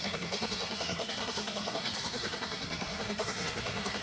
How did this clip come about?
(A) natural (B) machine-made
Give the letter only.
B